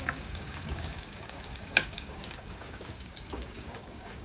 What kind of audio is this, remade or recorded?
remade